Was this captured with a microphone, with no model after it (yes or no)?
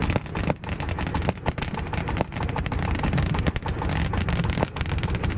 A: yes